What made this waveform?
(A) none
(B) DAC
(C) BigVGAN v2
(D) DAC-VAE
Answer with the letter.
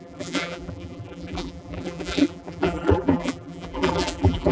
C